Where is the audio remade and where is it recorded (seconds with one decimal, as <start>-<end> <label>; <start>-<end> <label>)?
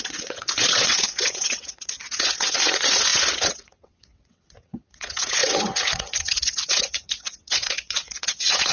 0.0-8.7 remade